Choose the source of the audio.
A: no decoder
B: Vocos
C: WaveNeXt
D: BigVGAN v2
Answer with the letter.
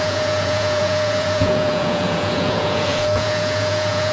B